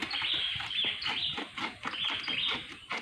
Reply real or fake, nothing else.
real